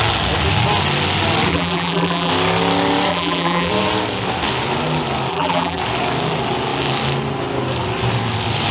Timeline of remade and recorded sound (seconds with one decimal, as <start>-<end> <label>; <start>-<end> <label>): 0.0-1.5 recorded; 1.5-2.3 remade; 2.3-3.1 recorded; 3.1-3.7 remade; 3.7-5.3 recorded; 5.3-5.8 remade; 5.8-8.7 recorded